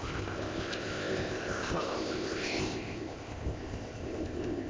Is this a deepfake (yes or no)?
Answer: yes